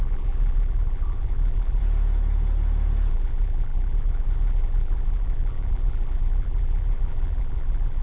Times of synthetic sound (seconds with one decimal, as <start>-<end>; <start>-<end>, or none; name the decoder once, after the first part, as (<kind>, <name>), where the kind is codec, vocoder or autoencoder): 0.0-1.8 (vocoder, BigVGAN v2); 3.1-8.0